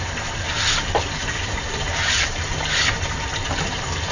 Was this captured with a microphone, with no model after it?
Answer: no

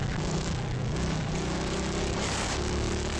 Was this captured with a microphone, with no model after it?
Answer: no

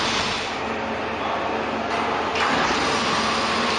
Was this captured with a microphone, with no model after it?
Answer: yes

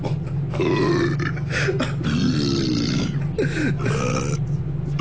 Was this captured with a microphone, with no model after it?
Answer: yes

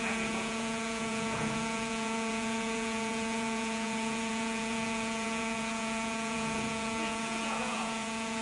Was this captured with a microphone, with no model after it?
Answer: no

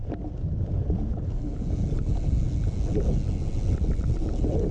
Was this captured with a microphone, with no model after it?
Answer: yes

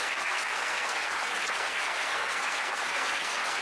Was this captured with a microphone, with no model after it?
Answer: no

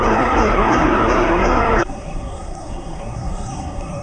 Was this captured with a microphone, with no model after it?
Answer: no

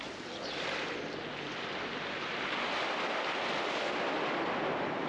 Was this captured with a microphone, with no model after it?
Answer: yes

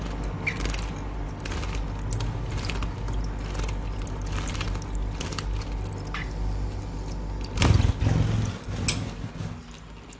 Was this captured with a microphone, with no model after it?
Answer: yes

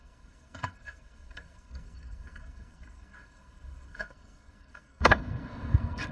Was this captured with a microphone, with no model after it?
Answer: no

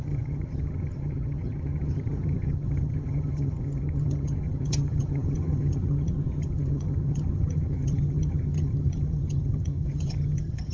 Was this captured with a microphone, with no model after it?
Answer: no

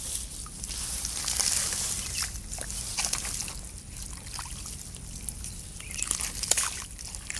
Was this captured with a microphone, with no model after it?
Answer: yes